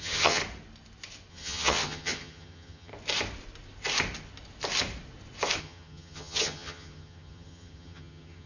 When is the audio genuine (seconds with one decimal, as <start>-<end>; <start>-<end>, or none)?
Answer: 0.4-1.3; 2.9-5.6